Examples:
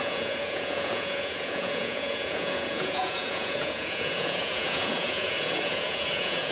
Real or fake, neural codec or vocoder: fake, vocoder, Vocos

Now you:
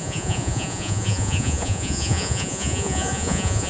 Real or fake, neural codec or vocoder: fake, vocoder, Vocos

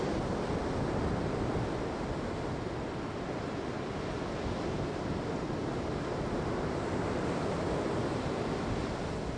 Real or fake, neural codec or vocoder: real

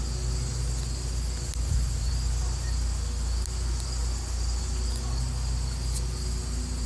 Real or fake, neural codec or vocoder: real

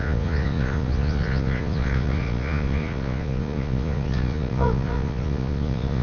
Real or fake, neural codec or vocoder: fake, vocoder, Vocos